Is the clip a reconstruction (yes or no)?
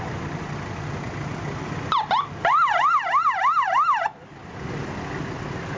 no